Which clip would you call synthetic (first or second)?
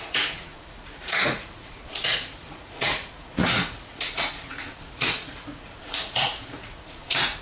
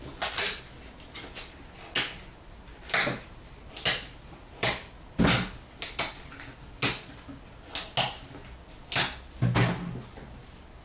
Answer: first